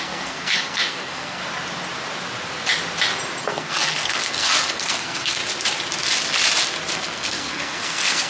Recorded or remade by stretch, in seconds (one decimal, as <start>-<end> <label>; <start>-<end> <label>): 0.0-1.4 remade; 1.4-3.4 recorded; 3.4-5.4 remade; 5.4-6.9 recorded; 6.9-8.3 remade